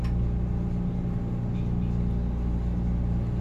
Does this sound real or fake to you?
real